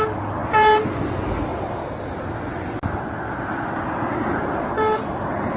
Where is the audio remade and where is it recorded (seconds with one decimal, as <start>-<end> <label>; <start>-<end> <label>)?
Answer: 0.0-1.5 recorded; 1.5-2.0 remade; 2.0-5.6 recorded